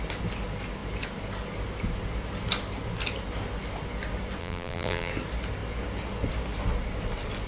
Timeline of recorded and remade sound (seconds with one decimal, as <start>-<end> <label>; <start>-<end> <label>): 0.0-4.4 recorded; 4.4-5.1 remade; 5.1-7.5 recorded